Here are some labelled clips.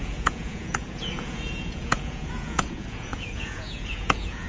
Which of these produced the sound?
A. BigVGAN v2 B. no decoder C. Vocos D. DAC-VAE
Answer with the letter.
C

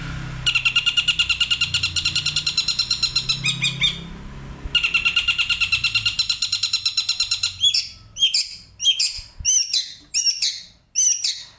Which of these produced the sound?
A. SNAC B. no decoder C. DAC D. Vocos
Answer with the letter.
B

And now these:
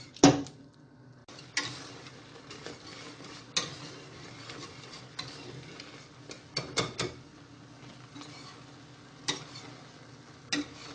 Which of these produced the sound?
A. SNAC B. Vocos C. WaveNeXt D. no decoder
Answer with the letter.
D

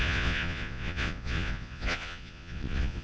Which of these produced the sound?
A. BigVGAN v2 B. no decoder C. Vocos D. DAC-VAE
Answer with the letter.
C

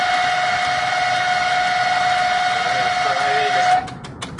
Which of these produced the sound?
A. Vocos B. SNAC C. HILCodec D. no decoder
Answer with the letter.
D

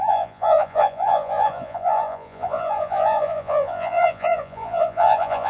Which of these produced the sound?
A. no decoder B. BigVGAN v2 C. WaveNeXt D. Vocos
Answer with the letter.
D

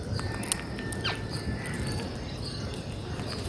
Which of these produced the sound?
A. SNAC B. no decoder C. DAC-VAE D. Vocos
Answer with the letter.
B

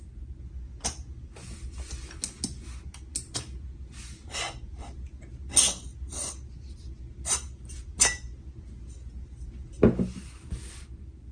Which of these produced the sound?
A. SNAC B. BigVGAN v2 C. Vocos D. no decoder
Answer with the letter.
D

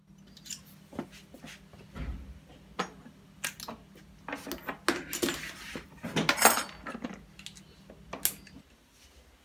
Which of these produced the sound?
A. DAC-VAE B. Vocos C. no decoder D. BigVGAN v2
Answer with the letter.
C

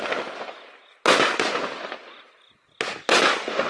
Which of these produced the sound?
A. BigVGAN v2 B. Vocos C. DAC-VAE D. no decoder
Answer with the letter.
D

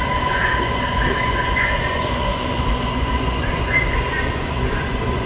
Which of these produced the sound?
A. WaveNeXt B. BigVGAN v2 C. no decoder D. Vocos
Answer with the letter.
D